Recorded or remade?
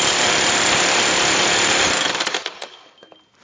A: recorded